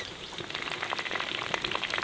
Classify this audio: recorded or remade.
recorded